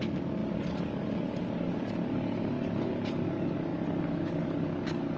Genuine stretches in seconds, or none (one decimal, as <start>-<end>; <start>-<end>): none